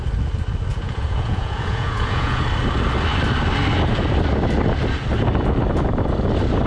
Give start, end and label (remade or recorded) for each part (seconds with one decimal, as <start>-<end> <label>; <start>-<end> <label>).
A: 0.0-0.7 recorded; 0.7-2.4 remade; 2.4-6.7 recorded